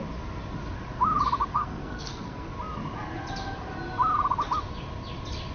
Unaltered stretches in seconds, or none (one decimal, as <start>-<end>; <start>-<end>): 0.0-1.5; 2.5-5.5